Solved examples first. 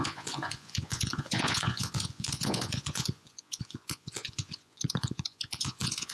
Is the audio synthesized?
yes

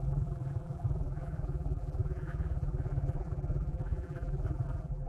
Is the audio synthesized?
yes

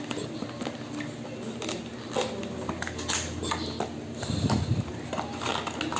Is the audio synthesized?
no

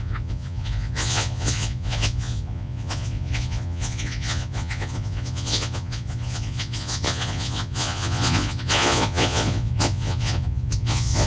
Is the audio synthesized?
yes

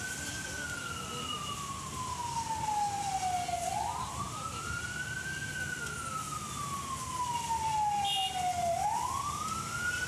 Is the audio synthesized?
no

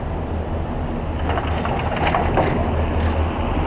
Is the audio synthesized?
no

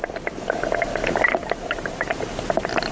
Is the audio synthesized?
no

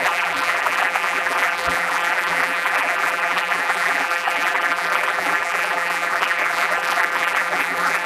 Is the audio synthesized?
yes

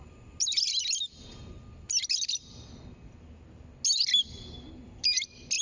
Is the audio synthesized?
no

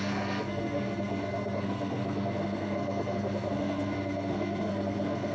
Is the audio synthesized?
yes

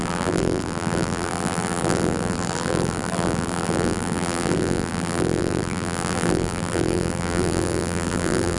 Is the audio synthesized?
yes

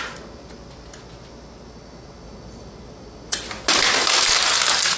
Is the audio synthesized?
no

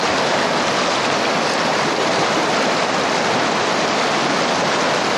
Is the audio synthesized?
no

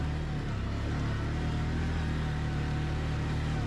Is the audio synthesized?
no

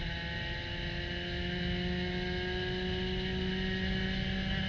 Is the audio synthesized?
no